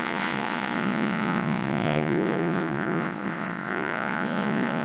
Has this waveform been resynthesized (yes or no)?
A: yes